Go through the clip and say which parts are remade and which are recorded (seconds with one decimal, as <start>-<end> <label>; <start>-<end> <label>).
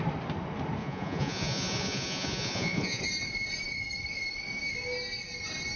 0.0-0.8 recorded; 0.8-3.0 remade; 3.0-5.8 recorded